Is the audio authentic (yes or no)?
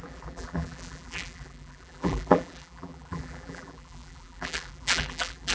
no